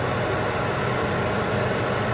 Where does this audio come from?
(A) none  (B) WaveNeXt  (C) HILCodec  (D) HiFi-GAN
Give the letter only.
A